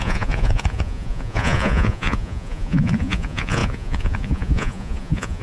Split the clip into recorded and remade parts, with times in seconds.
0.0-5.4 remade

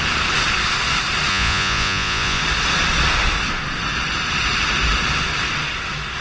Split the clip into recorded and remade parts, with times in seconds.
0.0-1.3 recorded; 1.3-2.4 remade; 2.4-6.2 recorded

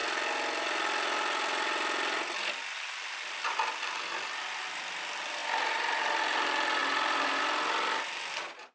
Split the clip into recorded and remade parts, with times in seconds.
0.0-8.7 recorded

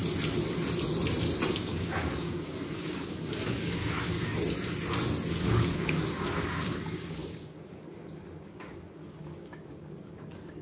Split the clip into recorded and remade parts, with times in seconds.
0.0-1.5 recorded; 1.5-4.3 remade; 4.3-5.3 recorded; 5.3-10.6 remade

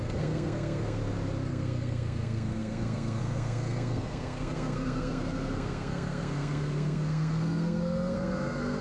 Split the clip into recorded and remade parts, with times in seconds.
0.0-1.0 remade; 1.0-1.5 recorded; 1.5-8.8 remade